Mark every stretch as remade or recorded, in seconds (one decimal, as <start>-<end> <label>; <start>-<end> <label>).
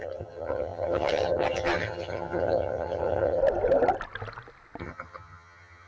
0.0-3.4 remade; 3.4-4.8 recorded; 4.8-5.9 remade